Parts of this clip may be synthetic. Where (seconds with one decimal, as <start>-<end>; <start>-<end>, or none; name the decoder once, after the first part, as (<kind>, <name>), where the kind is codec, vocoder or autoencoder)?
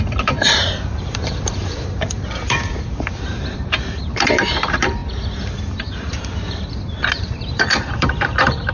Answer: 0.0-8.7 (vocoder, BigVGAN v2)